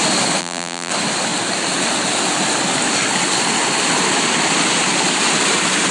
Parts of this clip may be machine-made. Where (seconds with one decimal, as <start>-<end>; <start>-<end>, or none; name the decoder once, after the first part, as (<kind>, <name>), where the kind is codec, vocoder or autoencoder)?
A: 0.4-0.9 (vocoder, BigVGAN v2)